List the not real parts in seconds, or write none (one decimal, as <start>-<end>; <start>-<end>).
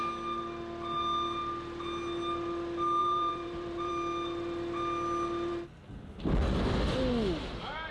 3.0-3.9